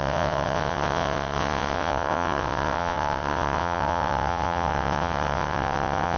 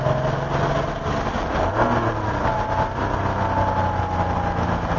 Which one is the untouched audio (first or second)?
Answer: second